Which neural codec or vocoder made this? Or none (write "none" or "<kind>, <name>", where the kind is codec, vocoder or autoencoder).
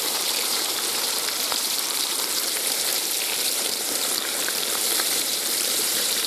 vocoder, BigVGAN v2